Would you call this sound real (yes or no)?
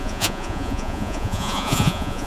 no